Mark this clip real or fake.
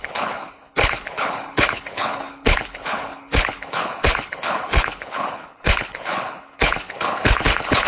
fake